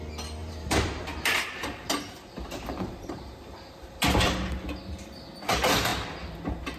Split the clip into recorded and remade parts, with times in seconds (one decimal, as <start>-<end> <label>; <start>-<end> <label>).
0.0-0.4 recorded; 0.4-4.5 remade; 4.5-6.8 recorded